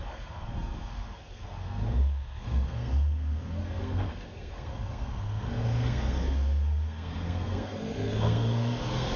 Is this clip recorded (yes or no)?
no